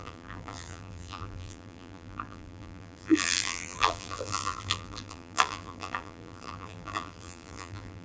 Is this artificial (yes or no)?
yes